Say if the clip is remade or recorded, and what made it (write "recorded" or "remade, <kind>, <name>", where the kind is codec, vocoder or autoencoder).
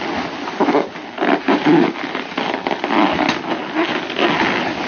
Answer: recorded